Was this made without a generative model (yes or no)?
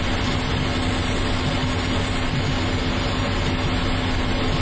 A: yes